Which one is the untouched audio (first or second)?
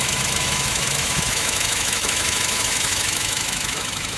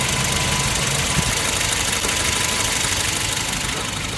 second